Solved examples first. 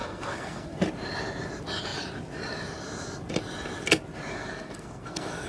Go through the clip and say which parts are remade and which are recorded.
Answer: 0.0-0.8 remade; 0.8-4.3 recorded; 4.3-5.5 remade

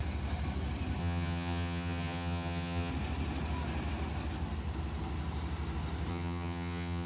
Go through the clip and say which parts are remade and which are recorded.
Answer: 0.0-1.0 recorded; 1.0-2.9 remade; 2.9-6.1 recorded; 6.1-7.1 remade